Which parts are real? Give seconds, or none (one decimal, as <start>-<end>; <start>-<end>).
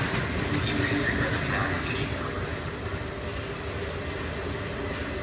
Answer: 0.0-2.5; 3.6-5.2